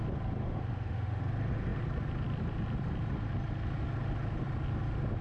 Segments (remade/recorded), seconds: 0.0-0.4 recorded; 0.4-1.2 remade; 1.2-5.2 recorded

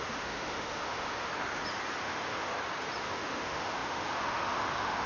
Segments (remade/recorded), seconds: 0.0-1.3 remade; 1.3-2.0 recorded; 2.0-2.5 remade; 2.5-3.0 recorded; 3.0-5.1 remade